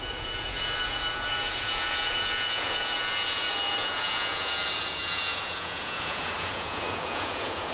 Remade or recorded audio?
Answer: remade